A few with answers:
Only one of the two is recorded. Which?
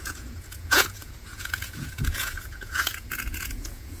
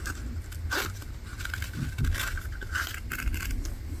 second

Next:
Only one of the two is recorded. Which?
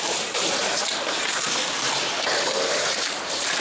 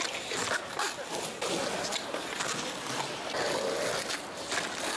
second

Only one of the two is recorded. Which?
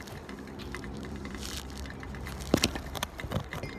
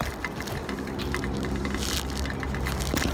second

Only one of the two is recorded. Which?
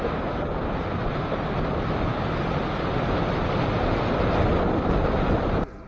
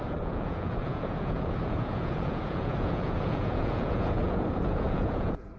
first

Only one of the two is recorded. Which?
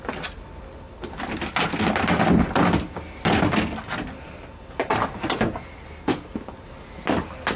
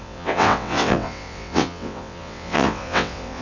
first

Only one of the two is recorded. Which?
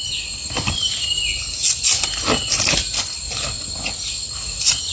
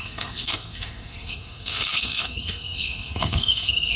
first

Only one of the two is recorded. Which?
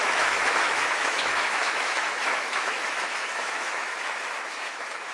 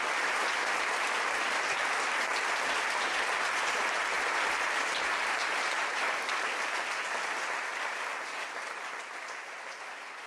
second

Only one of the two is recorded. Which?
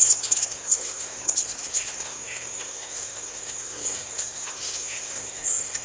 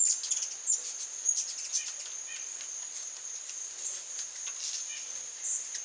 second